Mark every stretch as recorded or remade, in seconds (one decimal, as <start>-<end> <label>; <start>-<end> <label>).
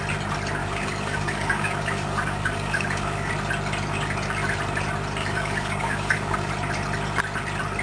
0.0-0.6 recorded; 0.6-3.3 remade; 3.3-5.2 recorded; 5.2-6.5 remade; 6.5-7.8 recorded